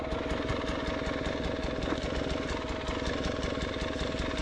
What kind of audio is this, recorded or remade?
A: recorded